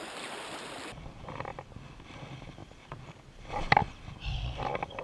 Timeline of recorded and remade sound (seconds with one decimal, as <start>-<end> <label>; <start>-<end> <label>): 0.0-1.5 remade; 1.5-2.1 recorded; 2.1-5.0 remade